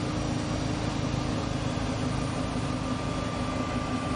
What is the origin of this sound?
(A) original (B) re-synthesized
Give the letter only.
A